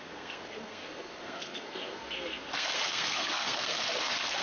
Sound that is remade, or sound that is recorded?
remade